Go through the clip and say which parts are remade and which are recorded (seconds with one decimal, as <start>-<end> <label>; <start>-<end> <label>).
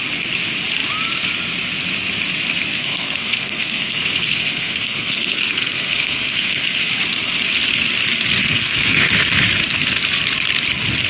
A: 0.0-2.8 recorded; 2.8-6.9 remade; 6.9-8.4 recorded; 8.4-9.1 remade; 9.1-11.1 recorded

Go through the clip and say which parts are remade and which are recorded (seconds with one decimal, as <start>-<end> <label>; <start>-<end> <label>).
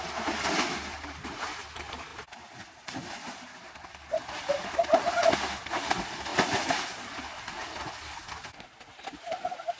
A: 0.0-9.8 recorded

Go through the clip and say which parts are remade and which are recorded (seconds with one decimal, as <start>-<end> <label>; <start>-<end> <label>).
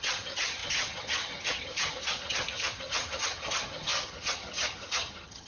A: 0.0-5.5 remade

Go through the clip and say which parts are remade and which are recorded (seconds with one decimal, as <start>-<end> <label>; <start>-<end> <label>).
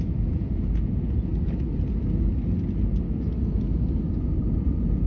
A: 0.0-1.3 remade; 1.3-4.4 recorded; 4.4-5.1 remade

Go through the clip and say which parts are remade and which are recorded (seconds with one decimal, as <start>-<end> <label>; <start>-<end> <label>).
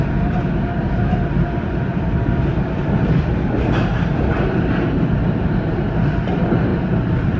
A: 0.0-7.4 recorded